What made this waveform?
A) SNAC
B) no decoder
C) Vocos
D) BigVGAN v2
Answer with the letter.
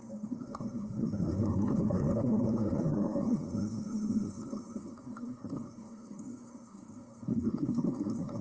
A